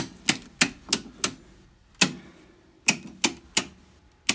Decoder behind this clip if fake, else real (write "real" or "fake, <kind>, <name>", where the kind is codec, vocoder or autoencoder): real